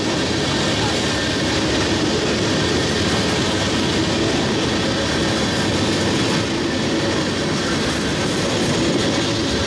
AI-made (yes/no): no